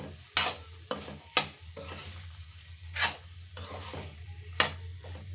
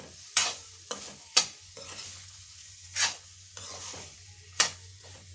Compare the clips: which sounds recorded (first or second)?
first